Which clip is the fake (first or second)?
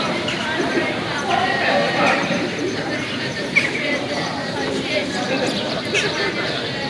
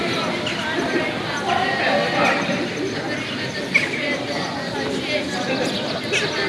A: first